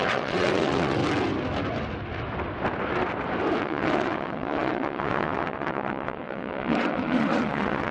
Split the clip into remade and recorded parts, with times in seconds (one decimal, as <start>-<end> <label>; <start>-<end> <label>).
0.0-1.0 remade; 1.0-3.6 recorded; 3.6-7.9 remade